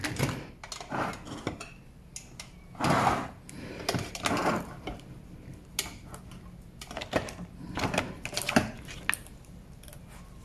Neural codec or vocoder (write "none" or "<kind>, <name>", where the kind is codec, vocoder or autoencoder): none